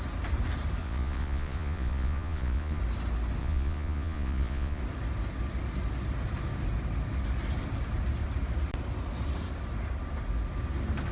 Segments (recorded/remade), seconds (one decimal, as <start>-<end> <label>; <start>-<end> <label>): 0.0-0.8 recorded; 0.8-2.8 remade; 2.8-3.4 recorded; 3.4-4.8 remade; 4.8-11.1 recorded

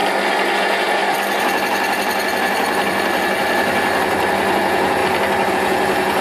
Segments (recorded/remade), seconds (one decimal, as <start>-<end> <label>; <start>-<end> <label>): 0.0-0.6 recorded; 0.6-1.0 remade; 1.0-4.6 recorded; 4.6-5.0 remade; 5.0-5.5 recorded; 5.5-6.2 remade

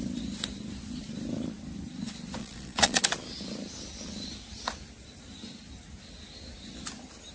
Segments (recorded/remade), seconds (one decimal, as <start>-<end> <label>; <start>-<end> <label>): 0.0-2.4 recorded; 2.4-3.0 remade; 3.0-7.3 recorded

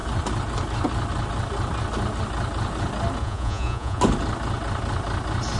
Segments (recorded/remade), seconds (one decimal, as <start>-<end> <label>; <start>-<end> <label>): 0.0-3.2 recorded; 3.2-4.0 remade; 4.0-5.6 recorded

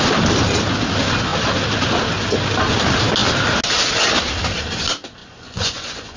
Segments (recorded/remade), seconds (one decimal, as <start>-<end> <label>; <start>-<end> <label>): 0.0-5.2 recorded; 5.2-6.2 remade

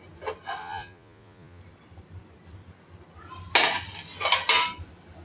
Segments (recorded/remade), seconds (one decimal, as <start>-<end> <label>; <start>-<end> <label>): 0.0-0.6 recorded; 0.6-1.6 remade; 1.6-5.2 recorded

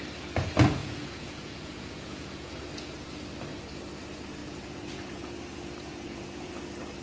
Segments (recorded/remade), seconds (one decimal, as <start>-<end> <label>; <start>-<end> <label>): 0.0-0.8 recorded; 0.8-2.5 remade; 2.5-4.4 recorded; 4.4-5.3 remade; 5.3-5.9 recorded; 5.9-6.5 remade; 6.5-7.0 recorded